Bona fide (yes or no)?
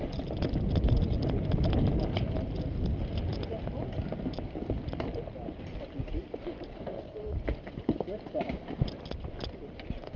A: yes